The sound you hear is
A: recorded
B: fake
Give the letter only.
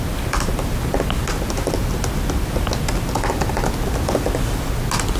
A